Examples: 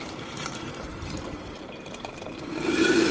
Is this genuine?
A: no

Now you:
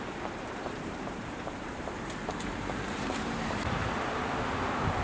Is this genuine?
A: no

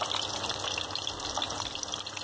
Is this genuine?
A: yes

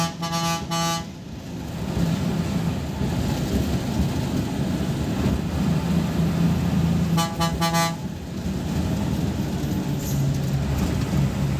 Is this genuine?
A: yes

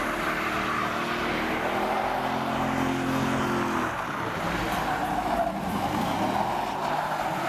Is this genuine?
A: yes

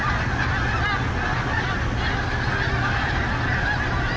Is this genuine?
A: yes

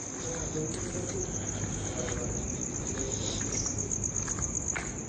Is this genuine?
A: yes